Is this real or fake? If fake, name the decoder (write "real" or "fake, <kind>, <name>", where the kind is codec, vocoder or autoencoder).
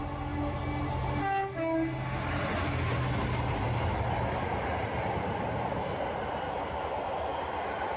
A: real